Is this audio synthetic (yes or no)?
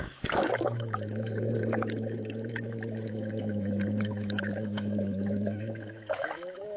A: yes